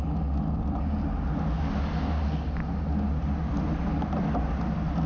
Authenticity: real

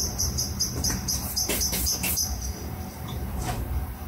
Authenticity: fake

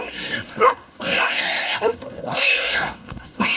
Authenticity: fake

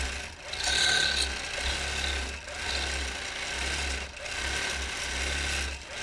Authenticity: real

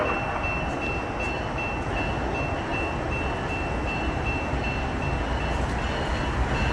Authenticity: real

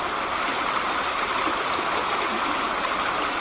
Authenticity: real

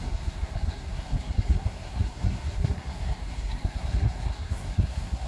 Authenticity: fake